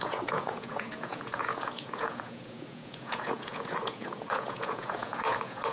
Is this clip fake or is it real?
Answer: fake